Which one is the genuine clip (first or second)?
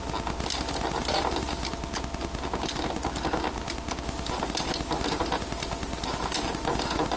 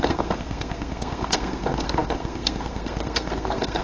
first